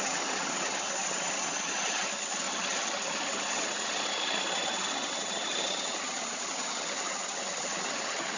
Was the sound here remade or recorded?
remade